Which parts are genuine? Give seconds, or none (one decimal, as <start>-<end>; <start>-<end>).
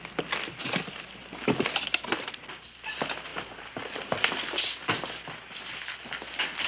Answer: 0.0-3.3; 4.3-6.7